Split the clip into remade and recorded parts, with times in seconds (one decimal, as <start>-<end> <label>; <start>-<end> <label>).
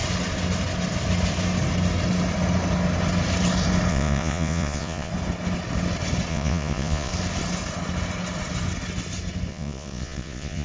0.0-3.9 recorded; 3.9-5.1 remade; 5.1-6.3 recorded; 6.3-7.1 remade; 7.1-9.5 recorded; 9.5-10.6 remade